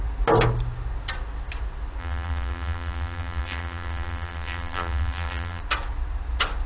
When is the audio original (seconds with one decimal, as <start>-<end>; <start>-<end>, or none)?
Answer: 0.0-2.0; 5.6-6.7